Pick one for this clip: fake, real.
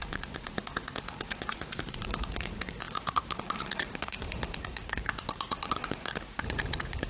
fake